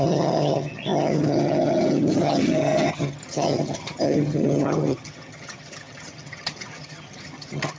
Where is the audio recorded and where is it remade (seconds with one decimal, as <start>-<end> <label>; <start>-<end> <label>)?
0.0-7.8 remade

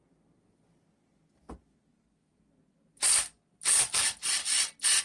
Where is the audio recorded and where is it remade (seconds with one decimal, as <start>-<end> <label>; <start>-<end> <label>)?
0.0-5.0 recorded

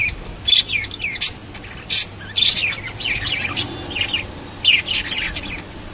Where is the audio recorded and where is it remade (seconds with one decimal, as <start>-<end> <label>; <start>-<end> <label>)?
0.0-5.9 recorded

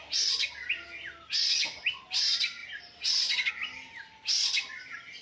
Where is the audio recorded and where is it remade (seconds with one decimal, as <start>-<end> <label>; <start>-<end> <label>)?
0.0-5.2 recorded

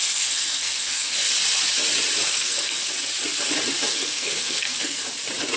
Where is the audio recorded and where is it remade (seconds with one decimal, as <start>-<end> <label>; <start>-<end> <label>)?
0.0-1.3 remade; 1.3-2.3 recorded; 2.3-2.9 remade; 2.9-3.9 recorded; 3.9-5.0 remade; 5.0-5.6 recorded

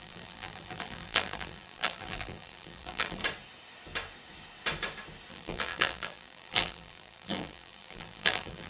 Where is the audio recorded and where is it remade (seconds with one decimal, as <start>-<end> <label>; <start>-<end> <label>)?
0.0-3.2 remade; 3.2-5.3 recorded; 5.3-8.7 remade

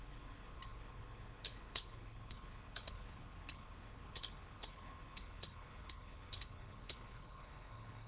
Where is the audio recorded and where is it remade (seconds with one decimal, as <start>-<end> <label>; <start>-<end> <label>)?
0.0-8.1 remade